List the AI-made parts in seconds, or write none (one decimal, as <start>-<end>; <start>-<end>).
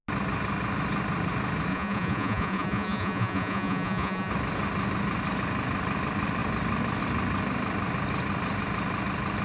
1.7-4.3